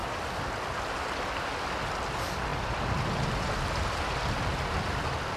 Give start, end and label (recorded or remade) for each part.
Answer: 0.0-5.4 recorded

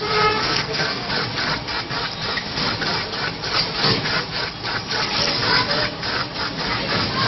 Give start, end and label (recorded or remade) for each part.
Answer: 0.0-0.4 recorded; 0.4-1.1 remade; 1.1-7.3 recorded

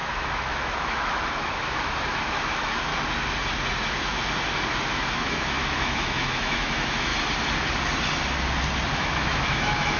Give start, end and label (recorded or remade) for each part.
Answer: 0.0-2.9 remade; 2.9-4.7 recorded; 4.7-7.1 remade; 7.1-9.0 recorded; 9.0-10.0 remade

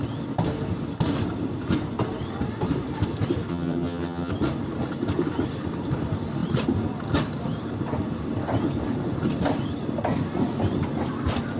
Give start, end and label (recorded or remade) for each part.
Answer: 0.0-3.5 recorded; 3.5-4.3 remade; 4.3-11.6 recorded

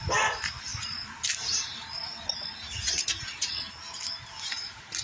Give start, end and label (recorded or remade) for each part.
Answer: 0.0-0.7 recorded; 0.7-3.7 remade; 3.7-5.0 recorded

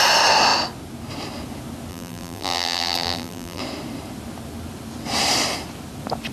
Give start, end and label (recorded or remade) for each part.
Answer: 0.0-1.9 recorded; 1.9-3.6 remade; 3.6-6.3 recorded

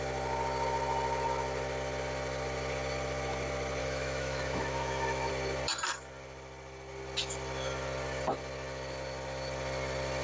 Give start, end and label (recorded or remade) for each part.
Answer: 0.0-3.8 recorded; 3.8-5.3 remade; 5.3-10.2 recorded

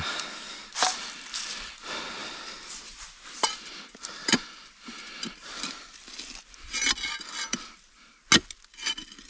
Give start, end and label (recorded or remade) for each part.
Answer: 0.0-2.2 recorded; 2.2-4.4 remade; 4.4-9.3 recorded